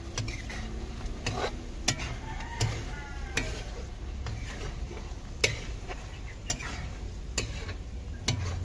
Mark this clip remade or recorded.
recorded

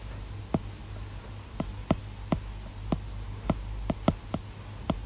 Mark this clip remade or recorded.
recorded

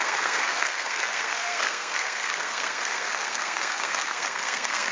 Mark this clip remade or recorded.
remade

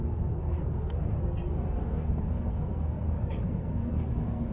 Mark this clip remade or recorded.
remade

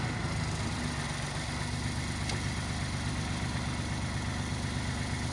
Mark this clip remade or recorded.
recorded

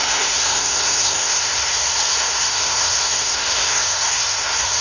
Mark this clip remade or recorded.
remade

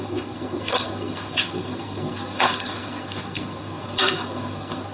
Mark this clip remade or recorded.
remade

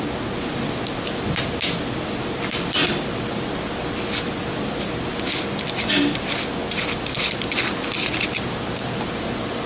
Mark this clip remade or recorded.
recorded